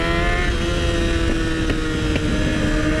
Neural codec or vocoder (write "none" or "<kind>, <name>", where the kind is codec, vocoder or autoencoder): none